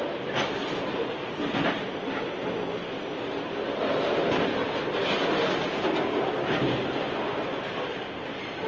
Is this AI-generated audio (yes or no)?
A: no